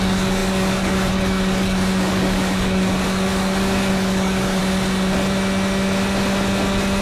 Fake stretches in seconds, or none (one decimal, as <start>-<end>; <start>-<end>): 0.0-4.6